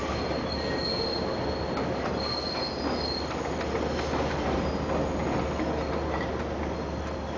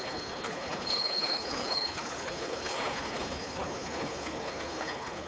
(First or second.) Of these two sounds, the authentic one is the first